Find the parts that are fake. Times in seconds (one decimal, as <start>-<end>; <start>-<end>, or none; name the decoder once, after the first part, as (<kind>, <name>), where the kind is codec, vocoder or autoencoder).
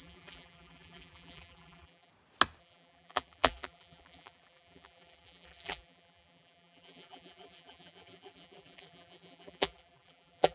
0.0-2.1 (vocoder, BigVGAN v2); 2.6-10.5